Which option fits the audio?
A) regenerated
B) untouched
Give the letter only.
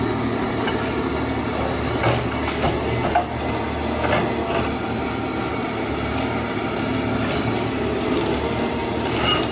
B